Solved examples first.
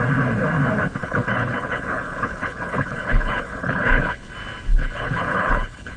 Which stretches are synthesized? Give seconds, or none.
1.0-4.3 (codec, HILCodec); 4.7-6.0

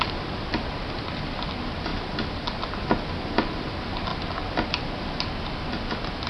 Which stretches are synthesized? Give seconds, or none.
none